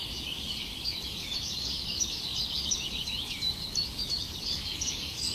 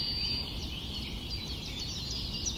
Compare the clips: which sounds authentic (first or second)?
second